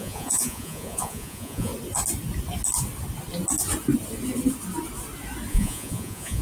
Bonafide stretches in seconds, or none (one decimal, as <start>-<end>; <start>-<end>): 1.7-5.5